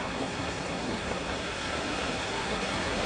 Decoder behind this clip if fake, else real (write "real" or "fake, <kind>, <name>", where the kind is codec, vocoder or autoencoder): fake, codec, SNAC